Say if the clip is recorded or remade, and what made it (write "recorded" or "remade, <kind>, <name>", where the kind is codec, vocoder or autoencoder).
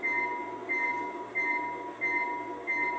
recorded